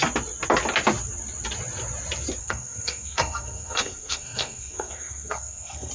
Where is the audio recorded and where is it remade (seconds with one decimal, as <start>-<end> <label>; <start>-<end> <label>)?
0.0-2.4 recorded; 2.4-5.9 remade